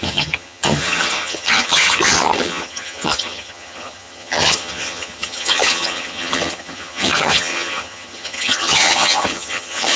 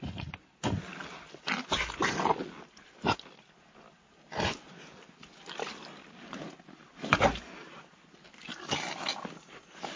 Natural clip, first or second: second